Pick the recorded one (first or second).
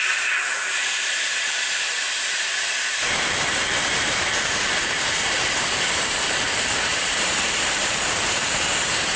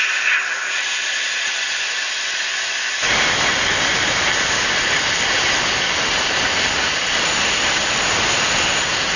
second